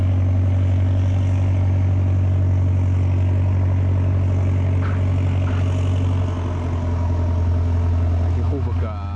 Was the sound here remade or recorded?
recorded